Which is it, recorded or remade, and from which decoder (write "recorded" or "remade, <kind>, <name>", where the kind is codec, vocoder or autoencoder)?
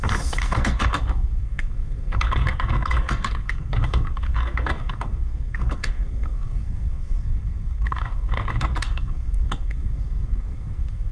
remade, codec, SNAC